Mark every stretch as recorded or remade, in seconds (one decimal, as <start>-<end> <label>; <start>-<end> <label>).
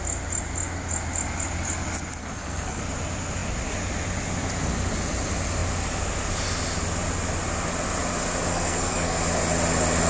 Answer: 0.0-2.2 recorded; 2.2-2.8 remade; 2.8-8.5 recorded; 8.5-9.2 remade; 9.2-10.1 recorded